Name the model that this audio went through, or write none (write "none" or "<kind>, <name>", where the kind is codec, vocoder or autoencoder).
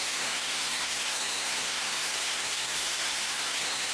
codec, SNAC